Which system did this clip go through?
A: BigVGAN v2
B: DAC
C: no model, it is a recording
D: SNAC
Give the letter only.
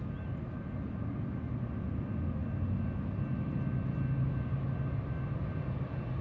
C